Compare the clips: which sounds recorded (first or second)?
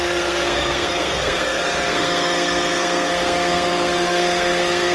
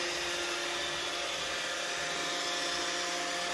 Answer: second